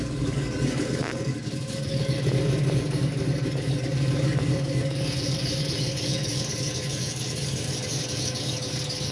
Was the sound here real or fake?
fake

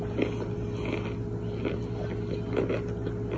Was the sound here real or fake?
real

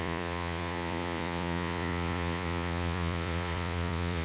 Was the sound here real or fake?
fake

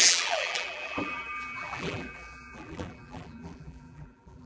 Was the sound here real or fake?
fake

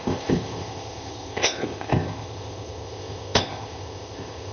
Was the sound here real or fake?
fake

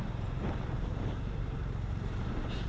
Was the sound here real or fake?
fake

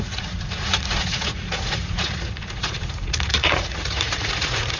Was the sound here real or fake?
fake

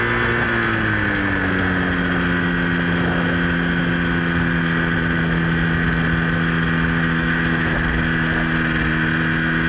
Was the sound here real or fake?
real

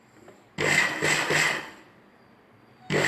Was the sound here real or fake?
real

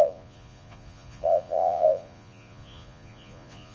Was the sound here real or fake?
fake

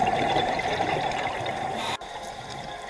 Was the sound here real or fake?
fake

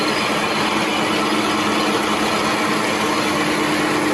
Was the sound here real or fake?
real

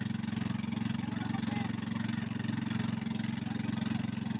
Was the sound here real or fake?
real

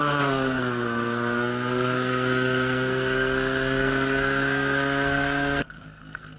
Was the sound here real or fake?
fake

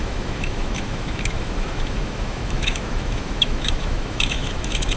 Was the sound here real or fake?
fake